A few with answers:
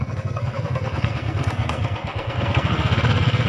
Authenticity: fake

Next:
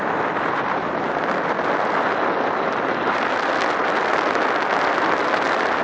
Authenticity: real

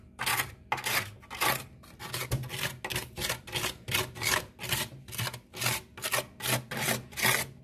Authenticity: real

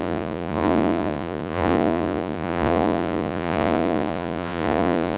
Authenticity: fake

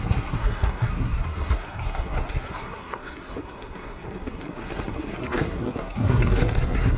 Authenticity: fake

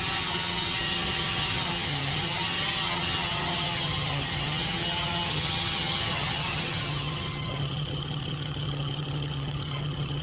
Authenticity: fake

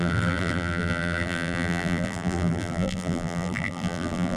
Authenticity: fake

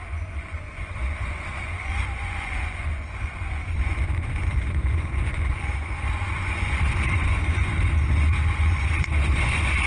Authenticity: fake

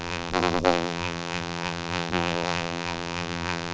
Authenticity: fake